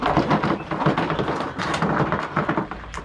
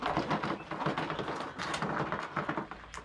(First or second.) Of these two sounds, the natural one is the second